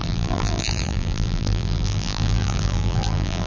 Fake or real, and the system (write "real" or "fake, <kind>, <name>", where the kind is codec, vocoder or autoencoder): fake, vocoder, BigVGAN v2